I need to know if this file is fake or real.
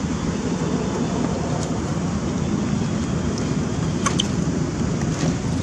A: real